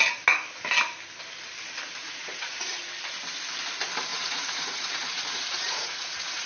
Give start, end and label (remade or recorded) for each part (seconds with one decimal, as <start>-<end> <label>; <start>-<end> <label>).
0.0-2.0 recorded; 2.0-2.8 remade; 2.8-4.1 recorded; 4.1-6.5 remade